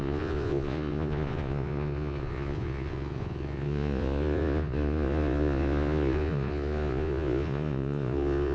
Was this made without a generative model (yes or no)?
no